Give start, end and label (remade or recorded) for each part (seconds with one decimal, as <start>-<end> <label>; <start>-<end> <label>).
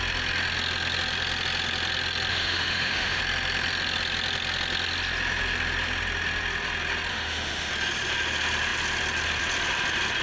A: 0.0-2.3 recorded; 2.3-3.2 remade; 3.2-7.1 recorded; 7.1-7.7 remade; 7.7-10.2 recorded